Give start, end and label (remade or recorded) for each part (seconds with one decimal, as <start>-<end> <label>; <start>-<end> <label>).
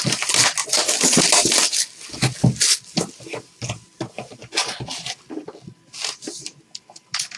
0.0-0.6 remade; 0.6-4.9 recorded; 4.9-7.4 remade